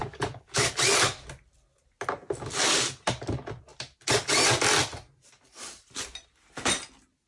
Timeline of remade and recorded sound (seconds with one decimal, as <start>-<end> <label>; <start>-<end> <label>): 0.0-0.7 remade; 0.7-7.3 recorded